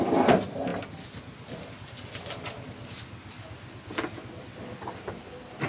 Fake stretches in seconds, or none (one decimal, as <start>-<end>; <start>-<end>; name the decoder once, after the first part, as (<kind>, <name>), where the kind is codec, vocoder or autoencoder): none